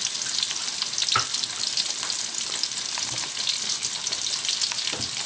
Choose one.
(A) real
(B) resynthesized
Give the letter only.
A